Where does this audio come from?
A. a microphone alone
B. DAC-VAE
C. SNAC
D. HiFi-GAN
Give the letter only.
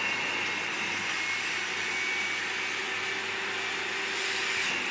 A